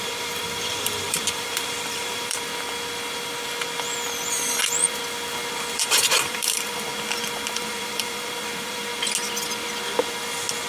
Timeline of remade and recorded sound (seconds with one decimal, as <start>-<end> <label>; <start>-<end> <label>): 0.0-2.5 remade; 2.5-5.7 recorded; 5.7-6.9 remade; 6.9-7.5 recorded; 7.5-8.9 remade; 8.9-10.7 recorded